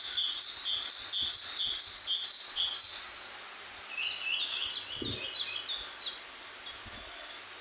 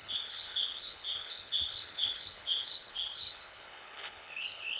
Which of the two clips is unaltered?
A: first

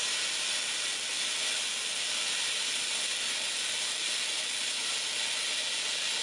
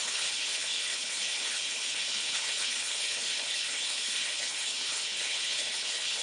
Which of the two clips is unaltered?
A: first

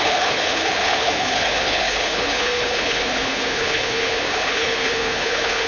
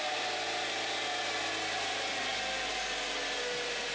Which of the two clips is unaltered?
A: second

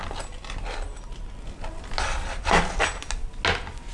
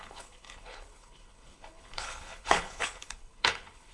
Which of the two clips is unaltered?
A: first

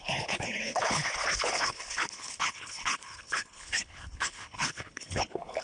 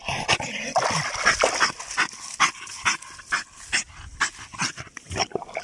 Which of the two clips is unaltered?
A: second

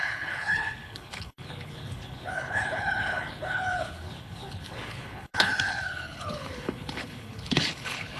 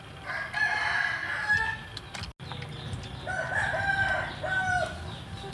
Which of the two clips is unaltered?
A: second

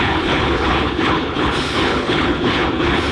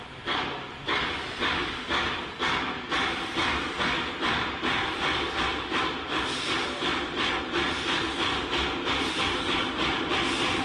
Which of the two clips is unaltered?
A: second